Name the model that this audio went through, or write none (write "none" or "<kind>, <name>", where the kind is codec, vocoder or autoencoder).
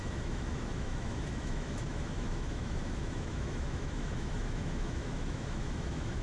autoencoder, DAC-VAE